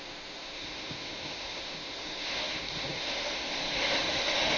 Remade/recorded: remade